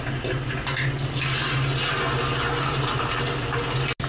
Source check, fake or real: real